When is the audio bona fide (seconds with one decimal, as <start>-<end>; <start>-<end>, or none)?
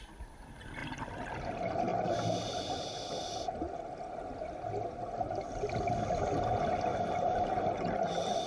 0.0-8.5